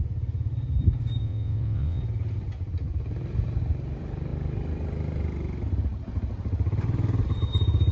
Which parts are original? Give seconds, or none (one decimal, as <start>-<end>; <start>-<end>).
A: 0.0-1.2; 2.0-7.9